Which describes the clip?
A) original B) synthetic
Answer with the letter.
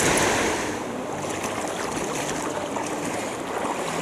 A